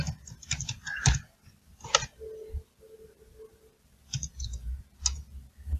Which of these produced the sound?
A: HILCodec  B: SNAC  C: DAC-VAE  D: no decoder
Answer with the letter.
D